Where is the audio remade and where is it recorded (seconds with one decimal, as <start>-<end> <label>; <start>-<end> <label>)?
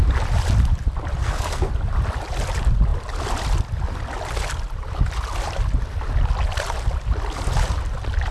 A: 0.0-1.2 recorded; 1.2-1.7 remade; 1.7-8.3 recorded